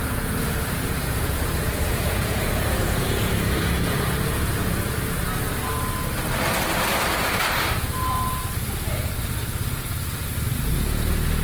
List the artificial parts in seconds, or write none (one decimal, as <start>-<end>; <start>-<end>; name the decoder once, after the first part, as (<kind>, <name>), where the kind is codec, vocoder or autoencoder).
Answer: 0.0-5.2 (vocoder, Vocos); 9.6-11.4